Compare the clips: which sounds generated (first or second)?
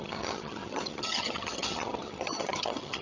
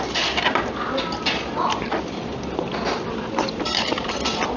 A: first